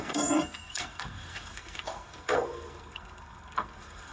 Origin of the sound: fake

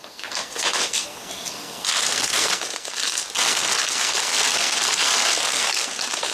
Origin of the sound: fake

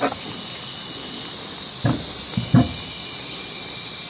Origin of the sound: real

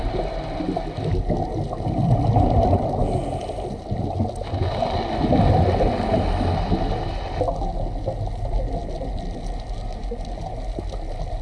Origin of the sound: real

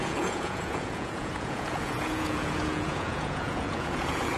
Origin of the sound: fake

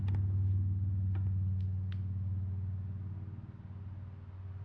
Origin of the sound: real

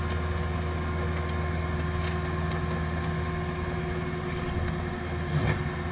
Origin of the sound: real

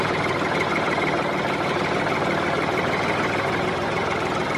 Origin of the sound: fake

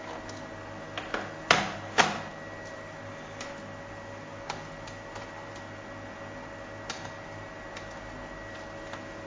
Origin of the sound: real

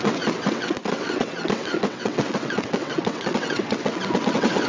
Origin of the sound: fake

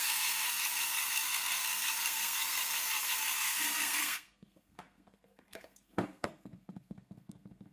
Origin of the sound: fake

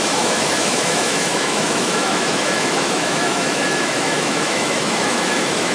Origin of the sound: fake